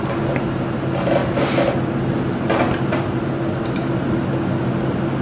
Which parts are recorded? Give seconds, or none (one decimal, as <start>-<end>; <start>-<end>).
0.0-1.2; 4.3-5.2